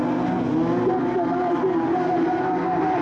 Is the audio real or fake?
real